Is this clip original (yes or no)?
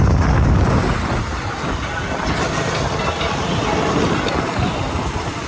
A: yes